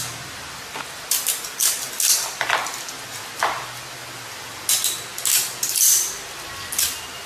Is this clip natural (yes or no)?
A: yes